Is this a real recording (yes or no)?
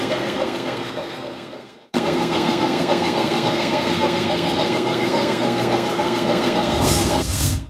no